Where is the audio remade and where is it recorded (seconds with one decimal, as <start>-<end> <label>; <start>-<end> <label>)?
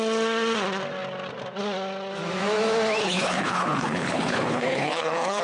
0.0-3.0 recorded; 3.0-5.4 remade